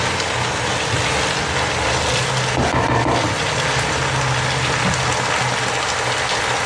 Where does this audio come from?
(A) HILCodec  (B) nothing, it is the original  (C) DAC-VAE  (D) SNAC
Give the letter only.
B